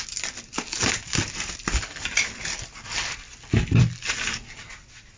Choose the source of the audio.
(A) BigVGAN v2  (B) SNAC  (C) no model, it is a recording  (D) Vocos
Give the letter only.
C